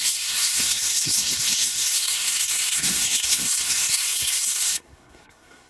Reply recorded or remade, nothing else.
remade